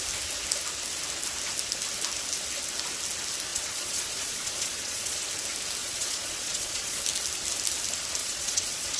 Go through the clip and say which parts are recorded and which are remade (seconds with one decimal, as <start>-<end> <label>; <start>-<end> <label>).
0.0-3.5 recorded; 3.5-5.2 remade; 5.2-5.8 recorded; 5.8-7.0 remade; 7.0-8.2 recorded; 8.2-9.0 remade